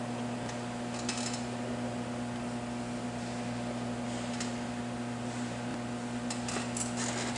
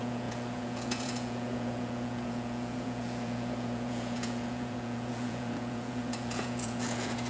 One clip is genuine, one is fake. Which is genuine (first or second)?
first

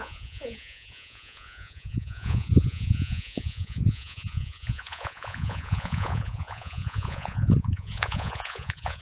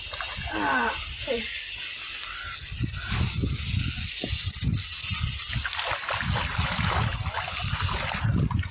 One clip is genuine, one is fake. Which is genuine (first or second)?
second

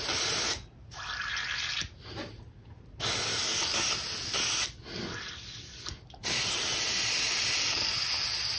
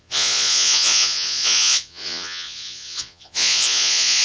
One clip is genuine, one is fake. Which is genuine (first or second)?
first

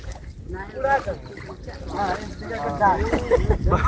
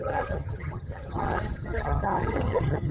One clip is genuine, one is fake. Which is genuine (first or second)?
first